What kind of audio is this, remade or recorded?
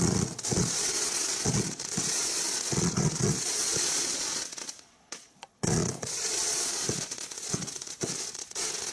remade